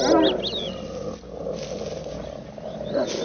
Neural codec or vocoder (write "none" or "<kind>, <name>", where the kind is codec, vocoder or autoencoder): none